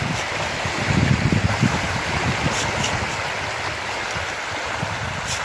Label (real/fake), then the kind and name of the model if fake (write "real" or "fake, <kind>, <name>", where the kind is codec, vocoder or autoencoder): real